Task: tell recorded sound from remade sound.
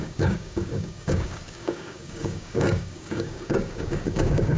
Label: remade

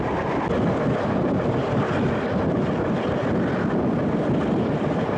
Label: recorded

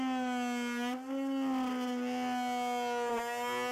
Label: recorded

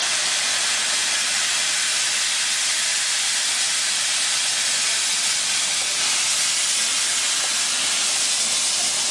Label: recorded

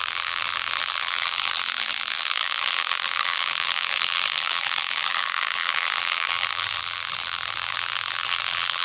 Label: remade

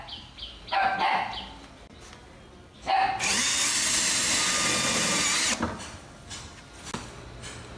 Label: recorded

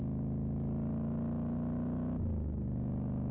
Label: recorded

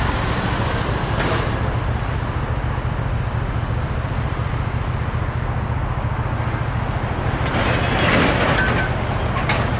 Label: recorded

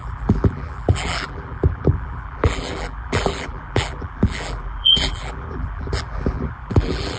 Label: remade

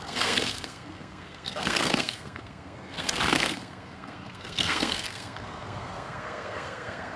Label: remade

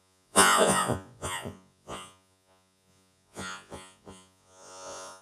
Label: remade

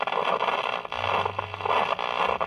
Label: recorded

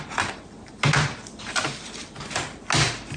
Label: recorded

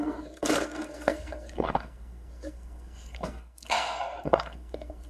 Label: remade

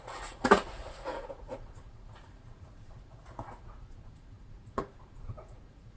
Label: remade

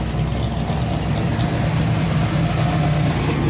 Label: recorded